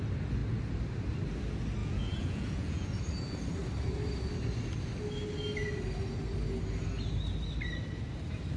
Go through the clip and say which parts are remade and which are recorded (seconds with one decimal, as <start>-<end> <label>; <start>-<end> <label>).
0.0-1.8 recorded; 1.8-3.0 remade; 3.0-8.6 recorded